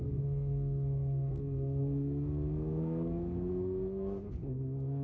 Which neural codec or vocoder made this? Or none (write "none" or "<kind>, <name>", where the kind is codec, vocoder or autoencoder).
codec, SNAC